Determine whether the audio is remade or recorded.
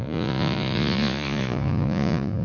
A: remade